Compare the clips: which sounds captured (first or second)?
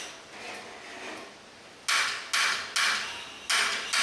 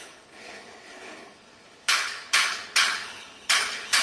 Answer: first